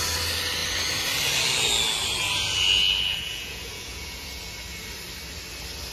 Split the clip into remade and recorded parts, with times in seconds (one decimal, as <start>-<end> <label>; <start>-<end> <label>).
0.0-3.1 recorded; 3.1-4.4 remade; 4.4-5.9 recorded